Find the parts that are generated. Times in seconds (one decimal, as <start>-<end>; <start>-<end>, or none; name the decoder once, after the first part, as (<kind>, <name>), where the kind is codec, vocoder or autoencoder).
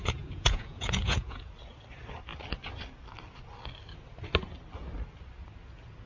0.0-1.5 (vocoder, Vocos)